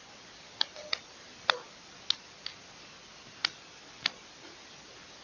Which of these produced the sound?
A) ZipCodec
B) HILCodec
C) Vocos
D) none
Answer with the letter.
D